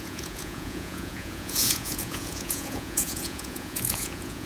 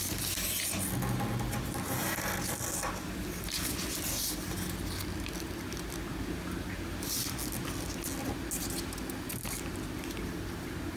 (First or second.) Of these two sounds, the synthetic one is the first